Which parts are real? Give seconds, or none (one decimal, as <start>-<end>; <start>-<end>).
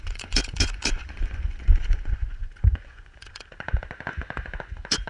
none